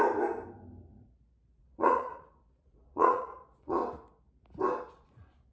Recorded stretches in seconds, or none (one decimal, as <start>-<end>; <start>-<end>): 0.0-1.6; 3.8-4.9